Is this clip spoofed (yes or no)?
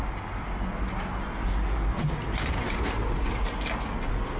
no